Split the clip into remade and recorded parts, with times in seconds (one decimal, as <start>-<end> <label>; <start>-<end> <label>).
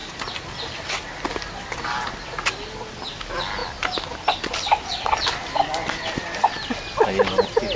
0.0-7.8 recorded